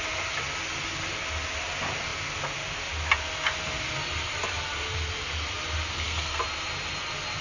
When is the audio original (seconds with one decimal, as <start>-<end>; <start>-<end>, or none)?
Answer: 0.0-5.9; 6.4-7.4